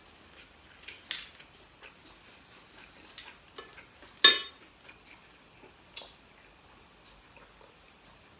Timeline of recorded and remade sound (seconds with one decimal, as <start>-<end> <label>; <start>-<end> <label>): 0.0-8.4 recorded